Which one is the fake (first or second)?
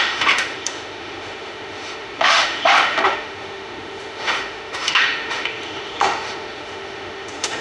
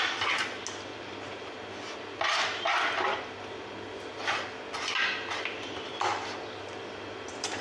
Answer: first